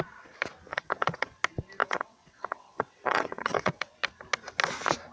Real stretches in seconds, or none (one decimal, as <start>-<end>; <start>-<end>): 0.0-0.7; 1.3-1.8; 3.9-5.1